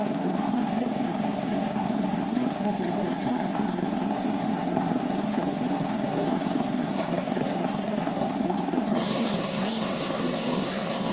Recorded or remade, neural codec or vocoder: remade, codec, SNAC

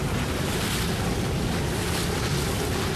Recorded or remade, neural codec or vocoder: recorded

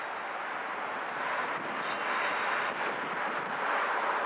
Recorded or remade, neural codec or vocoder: remade, vocoder, BigVGAN v2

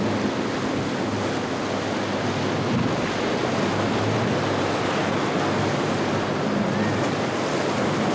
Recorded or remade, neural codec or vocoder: recorded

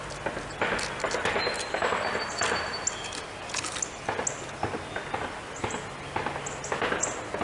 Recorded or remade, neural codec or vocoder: recorded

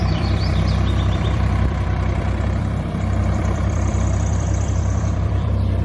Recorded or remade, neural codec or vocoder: remade, vocoder, BigVGAN v2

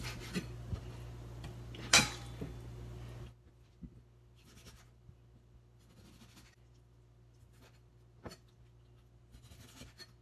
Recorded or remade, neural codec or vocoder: recorded